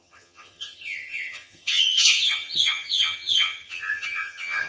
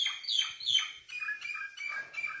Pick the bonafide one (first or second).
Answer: second